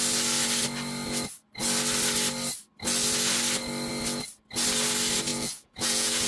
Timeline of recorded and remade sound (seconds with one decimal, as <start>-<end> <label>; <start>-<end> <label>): 0.0-5.3 recorded; 5.3-6.3 remade